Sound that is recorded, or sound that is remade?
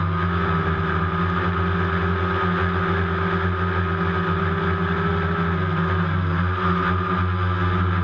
recorded